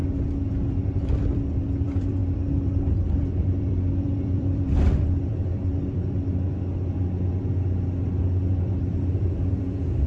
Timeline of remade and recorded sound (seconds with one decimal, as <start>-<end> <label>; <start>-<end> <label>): 0.0-0.7 recorded; 0.7-5.7 remade; 5.7-8.9 recorded; 8.9-10.1 remade